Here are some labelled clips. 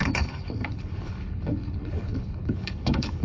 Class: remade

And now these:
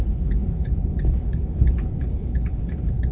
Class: remade